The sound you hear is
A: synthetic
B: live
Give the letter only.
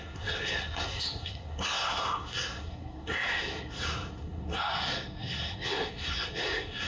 A